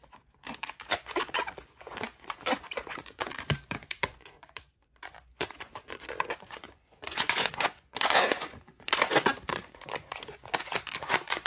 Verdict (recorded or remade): remade